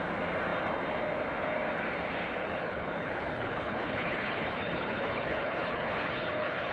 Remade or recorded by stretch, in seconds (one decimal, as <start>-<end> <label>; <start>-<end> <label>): 0.0-2.4 recorded; 2.4-6.7 remade